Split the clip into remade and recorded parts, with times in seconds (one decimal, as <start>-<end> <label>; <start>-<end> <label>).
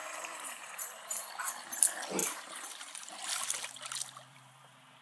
0.0-1.3 remade; 1.3-2.2 recorded; 2.2-3.1 remade; 3.1-4.3 recorded; 4.3-5.0 remade